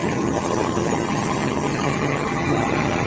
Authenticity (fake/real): fake